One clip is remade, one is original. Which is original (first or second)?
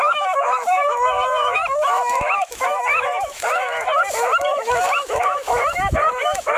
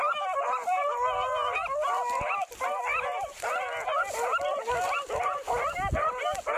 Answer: second